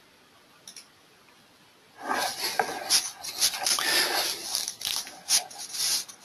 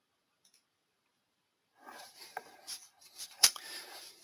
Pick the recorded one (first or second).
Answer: first